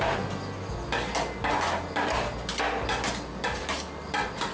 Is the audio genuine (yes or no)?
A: yes